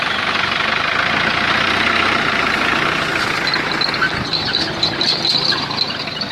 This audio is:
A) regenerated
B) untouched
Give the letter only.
B